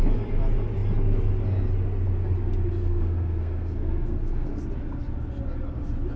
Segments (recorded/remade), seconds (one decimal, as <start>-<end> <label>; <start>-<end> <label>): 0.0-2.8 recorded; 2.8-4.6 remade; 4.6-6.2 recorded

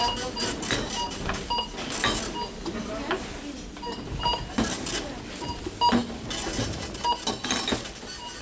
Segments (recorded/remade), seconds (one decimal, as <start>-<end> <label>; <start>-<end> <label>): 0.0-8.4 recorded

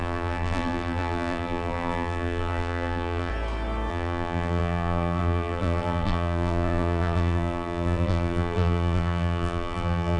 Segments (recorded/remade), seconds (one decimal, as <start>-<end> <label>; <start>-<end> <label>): 0.0-3.3 remade; 3.3-3.9 recorded; 3.9-10.2 remade

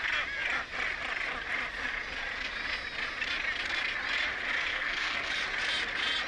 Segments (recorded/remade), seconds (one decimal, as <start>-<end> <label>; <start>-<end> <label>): 0.0-4.7 recorded; 4.7-5.3 remade; 5.3-6.3 recorded